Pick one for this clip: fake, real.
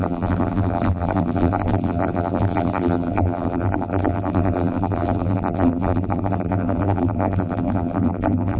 fake